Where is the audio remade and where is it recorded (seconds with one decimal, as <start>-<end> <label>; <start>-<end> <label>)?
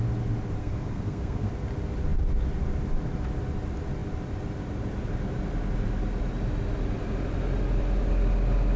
0.0-0.6 recorded; 0.6-1.5 remade; 1.5-8.8 recorded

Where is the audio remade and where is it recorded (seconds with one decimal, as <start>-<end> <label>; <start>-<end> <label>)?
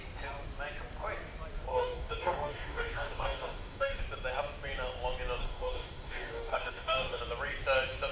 0.0-1.7 recorded; 1.7-4.0 remade; 4.0-5.4 recorded; 5.4-7.2 remade; 7.2-8.1 recorded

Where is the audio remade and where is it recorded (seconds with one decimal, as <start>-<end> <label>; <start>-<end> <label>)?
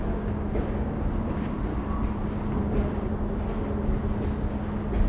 0.0-1.7 remade; 1.7-5.1 recorded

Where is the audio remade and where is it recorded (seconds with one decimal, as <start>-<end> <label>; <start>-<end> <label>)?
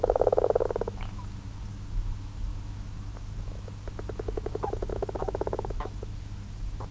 0.0-6.9 remade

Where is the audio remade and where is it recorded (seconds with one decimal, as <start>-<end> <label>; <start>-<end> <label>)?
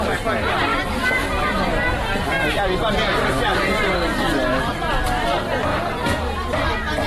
0.0-7.1 recorded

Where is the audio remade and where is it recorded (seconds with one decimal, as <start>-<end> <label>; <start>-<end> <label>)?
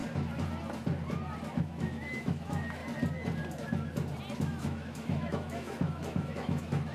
0.0-1.5 recorded; 1.5-2.8 remade; 2.8-4.4 recorded; 4.4-6.9 remade